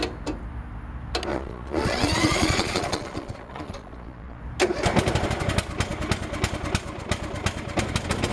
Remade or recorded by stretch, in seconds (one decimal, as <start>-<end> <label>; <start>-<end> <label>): 0.0-1.3 recorded; 1.3-4.4 remade; 4.4-8.3 recorded